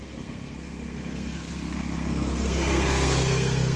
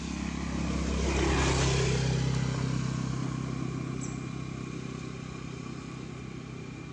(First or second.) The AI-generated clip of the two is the first